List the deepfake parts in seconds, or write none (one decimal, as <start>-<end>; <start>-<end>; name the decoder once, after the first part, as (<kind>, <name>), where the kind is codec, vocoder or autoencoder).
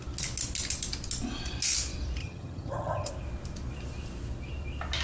2.2-3.1 (vocoder, HiFi-GAN)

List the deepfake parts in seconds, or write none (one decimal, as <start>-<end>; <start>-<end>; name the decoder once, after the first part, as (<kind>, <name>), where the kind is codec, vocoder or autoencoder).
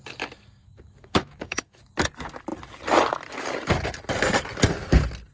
0.6-1.9 (autoencoder, DAC-VAE)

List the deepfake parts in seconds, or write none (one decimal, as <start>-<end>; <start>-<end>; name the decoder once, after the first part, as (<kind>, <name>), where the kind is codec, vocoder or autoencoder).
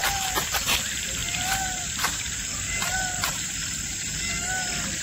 0.0-0.7 (vocoder, BigVGAN v2); 1.2-4.2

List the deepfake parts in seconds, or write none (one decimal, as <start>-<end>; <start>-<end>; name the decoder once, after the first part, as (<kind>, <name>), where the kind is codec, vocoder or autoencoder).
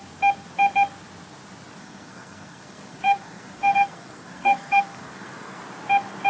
1.8-5.6 (codec, SNAC)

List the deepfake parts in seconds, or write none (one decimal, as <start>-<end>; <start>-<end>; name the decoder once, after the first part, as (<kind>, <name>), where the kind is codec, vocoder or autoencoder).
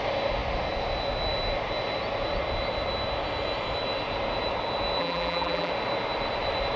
5.0-5.7 (vocoder, BigVGAN v2)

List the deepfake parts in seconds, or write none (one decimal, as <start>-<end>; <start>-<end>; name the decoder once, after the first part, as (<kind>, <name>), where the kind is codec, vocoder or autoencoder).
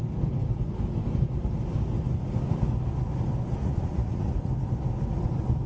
3.6-4.3 (vocoder, Vocos)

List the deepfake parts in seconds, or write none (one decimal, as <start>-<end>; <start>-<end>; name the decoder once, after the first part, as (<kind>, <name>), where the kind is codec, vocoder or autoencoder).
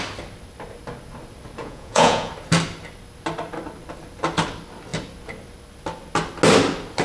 1.6-2.3 (vocoder, Vocos)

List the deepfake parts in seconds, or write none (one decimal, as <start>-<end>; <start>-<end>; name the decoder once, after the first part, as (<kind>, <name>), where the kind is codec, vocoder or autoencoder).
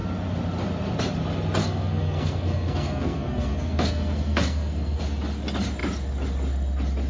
1.6-5.0 (codec, SNAC)